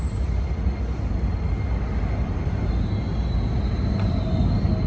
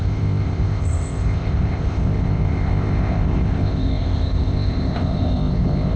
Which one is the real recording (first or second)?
first